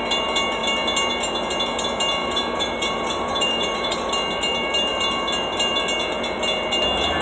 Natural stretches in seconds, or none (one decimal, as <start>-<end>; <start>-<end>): 0.0-2.2; 4.1-7.2